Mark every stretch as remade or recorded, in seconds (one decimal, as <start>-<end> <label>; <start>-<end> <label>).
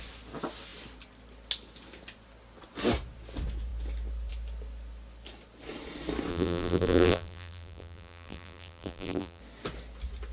0.0-6.3 recorded; 6.3-9.4 remade; 9.4-10.3 recorded